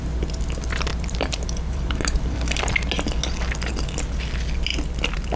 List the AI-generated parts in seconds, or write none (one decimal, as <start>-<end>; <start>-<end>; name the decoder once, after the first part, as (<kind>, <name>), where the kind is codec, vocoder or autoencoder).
0.9-2.7 (vocoder, BigVGAN v2)